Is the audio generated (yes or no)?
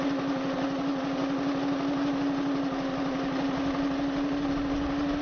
no